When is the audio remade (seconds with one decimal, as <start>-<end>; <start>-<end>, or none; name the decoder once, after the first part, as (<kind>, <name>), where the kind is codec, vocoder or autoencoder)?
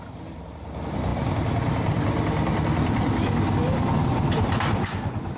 none